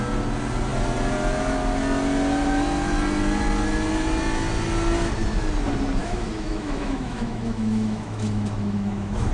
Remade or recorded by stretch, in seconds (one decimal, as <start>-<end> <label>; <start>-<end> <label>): 0.0-6.0 recorded; 6.0-9.3 remade